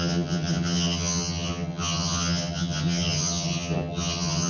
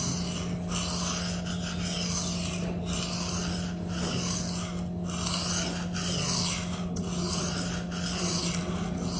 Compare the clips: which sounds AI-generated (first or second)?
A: first